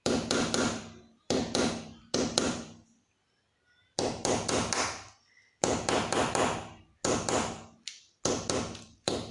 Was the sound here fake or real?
fake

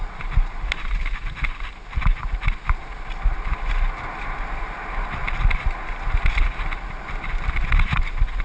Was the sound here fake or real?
real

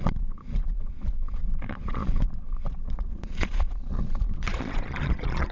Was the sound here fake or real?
fake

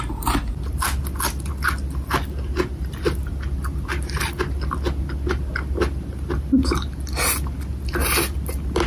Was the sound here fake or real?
real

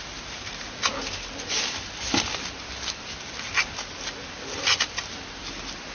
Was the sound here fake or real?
real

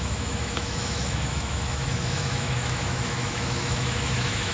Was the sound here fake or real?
fake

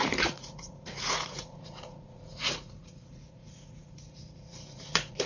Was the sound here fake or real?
fake